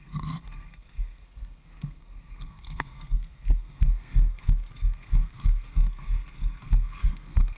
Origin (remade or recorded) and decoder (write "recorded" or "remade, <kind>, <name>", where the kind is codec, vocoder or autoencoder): remade, codec, SNAC